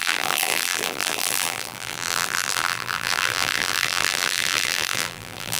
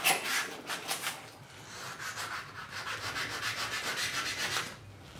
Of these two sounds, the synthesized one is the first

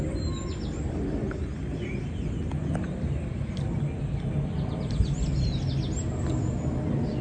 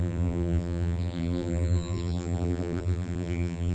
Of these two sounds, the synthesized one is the second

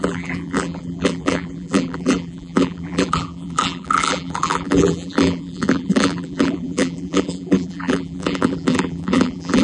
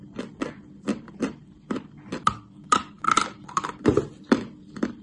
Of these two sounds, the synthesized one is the first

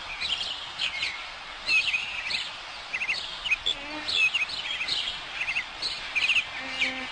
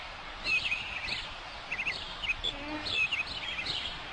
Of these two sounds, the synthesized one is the second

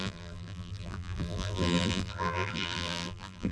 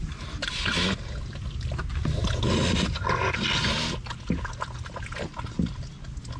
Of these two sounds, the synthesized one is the first